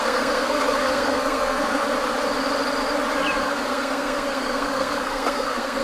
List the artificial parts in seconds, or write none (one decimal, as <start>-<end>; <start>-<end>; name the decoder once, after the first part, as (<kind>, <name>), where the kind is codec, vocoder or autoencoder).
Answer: 0.0-1.8 (codec, SNAC); 3.4-5.8